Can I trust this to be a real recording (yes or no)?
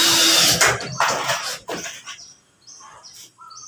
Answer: yes